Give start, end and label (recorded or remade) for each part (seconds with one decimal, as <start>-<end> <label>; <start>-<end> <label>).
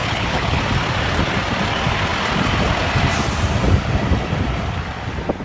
0.0-0.6 remade; 0.6-5.4 recorded